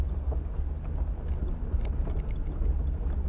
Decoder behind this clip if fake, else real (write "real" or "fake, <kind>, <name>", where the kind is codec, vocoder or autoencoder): real